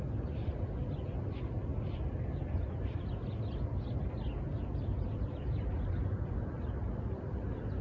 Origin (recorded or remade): recorded